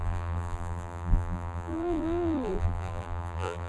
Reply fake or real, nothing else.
fake